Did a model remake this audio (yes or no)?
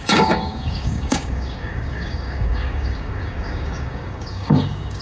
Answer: yes